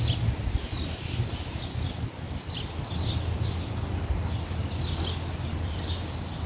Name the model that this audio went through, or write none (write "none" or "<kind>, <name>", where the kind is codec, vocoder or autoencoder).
none